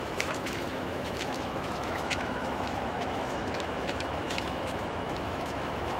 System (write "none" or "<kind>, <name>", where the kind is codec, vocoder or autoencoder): autoencoder, DAC-VAE